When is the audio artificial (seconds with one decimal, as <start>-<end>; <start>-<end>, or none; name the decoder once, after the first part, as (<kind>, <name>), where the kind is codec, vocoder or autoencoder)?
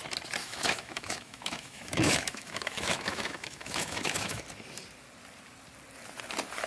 0.4-4.4 (autoencoder, DAC-VAE)